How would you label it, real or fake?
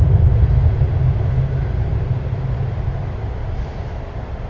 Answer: real